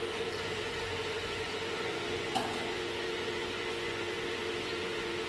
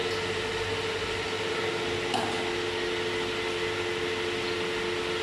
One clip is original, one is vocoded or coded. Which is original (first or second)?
second